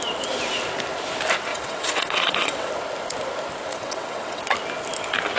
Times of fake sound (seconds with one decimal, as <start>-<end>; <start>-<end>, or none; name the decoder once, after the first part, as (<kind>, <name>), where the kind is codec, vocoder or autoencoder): 1.5-2.7 (vocoder, WaveNeXt); 3.7-4.4